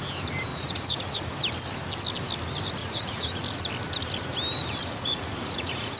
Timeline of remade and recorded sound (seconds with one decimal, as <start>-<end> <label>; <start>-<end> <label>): 0.0-0.5 recorded; 0.5-1.3 remade; 1.3-2.8 recorded; 2.8-3.4 remade; 3.4-4.8 recorded; 4.8-6.0 remade